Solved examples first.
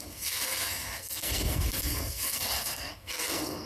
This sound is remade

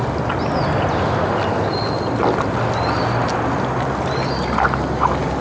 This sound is recorded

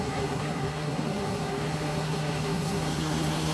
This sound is remade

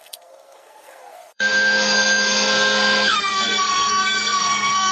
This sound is remade